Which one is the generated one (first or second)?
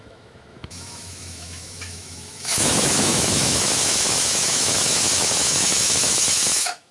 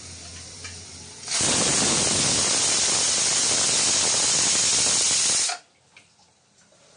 first